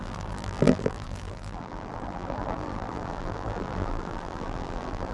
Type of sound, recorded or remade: remade